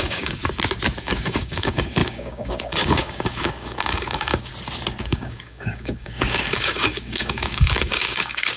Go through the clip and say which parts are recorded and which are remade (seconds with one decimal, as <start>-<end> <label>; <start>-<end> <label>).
0.0-0.4 remade; 0.4-1.0 recorded; 1.0-4.5 remade; 4.5-5.0 recorded; 5.0-8.6 remade